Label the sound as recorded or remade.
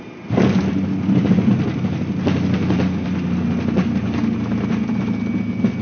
recorded